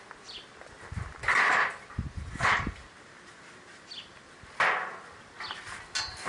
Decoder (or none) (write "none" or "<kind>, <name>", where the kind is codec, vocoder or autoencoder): none